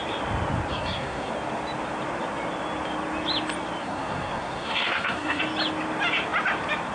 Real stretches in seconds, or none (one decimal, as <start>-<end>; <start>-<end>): 0.0-0.7; 1.3-3.8; 5.4-6.9